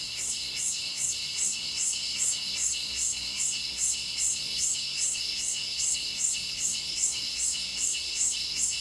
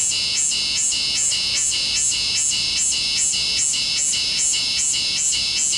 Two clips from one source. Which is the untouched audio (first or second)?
second